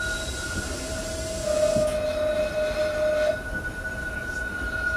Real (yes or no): yes